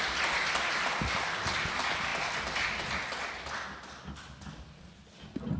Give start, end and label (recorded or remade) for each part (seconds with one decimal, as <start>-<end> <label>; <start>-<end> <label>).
0.0-5.6 recorded